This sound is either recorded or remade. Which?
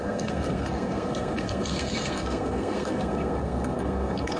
remade